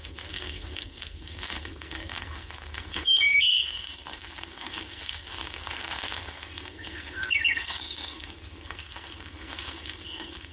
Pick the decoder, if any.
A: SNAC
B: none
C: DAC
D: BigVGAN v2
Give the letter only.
A